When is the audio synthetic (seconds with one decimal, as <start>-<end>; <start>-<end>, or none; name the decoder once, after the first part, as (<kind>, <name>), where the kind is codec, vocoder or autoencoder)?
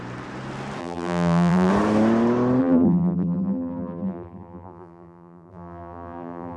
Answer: 0.8-1.7 (vocoder, BigVGAN v2); 2.6-6.6